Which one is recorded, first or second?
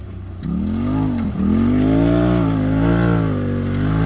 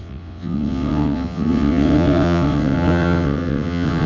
first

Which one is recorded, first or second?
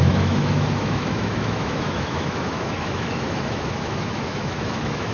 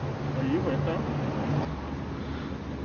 second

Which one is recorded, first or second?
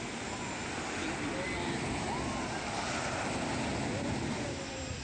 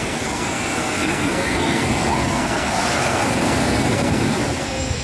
first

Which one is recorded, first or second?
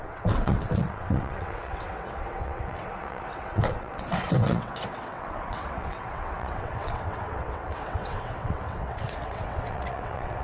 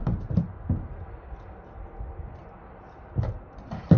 second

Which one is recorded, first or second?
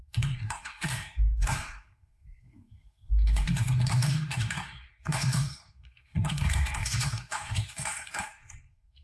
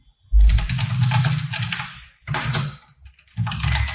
second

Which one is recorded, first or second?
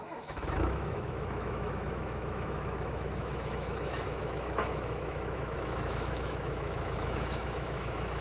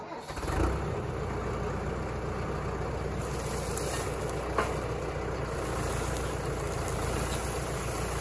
second